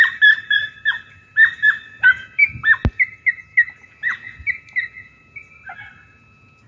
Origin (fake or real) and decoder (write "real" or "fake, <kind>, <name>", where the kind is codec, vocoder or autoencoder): real